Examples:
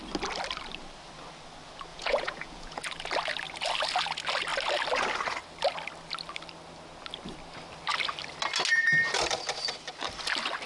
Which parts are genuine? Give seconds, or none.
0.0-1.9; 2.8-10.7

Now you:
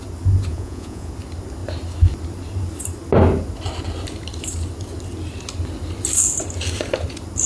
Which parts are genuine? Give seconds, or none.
0.0-0.5; 1.1-7.5

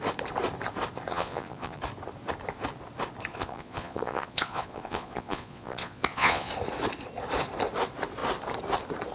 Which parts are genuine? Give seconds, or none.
0.0-1.1; 1.8-3.3; 6.5-9.1

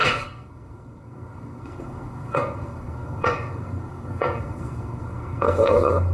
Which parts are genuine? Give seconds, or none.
none

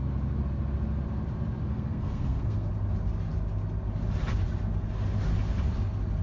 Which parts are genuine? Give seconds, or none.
0.0-1.7; 2.7-6.2

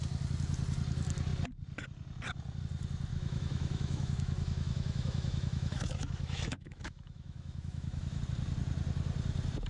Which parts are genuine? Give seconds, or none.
0.0-3.1; 8.2-9.7